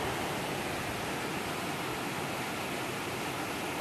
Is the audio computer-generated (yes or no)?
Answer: no